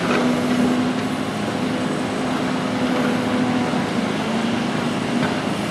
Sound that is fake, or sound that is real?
real